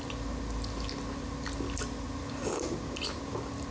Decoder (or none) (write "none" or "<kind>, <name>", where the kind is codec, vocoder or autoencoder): none